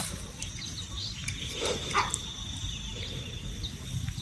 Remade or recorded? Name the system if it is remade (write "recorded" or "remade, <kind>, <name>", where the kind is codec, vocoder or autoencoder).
recorded